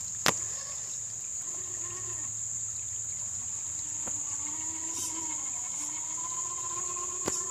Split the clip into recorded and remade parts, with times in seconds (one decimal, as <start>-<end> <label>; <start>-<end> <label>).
0.0-7.5 recorded